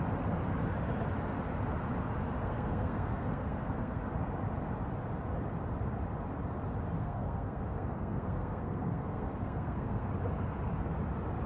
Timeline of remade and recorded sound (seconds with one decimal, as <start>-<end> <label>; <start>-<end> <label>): 0.0-2.4 recorded; 2.4-4.0 remade; 4.0-7.0 recorded; 7.0-10.1 remade; 10.1-11.5 recorded